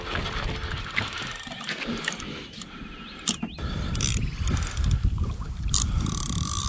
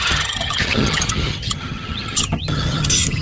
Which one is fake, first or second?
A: second